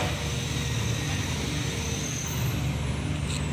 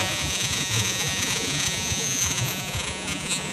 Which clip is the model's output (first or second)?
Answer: second